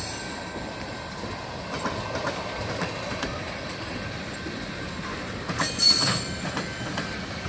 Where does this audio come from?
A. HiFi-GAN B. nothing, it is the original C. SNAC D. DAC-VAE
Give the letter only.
B